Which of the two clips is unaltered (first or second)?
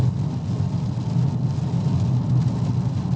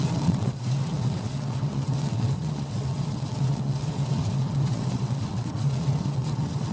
first